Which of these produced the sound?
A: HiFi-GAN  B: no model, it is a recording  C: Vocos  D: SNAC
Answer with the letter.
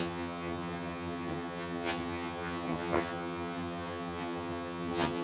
A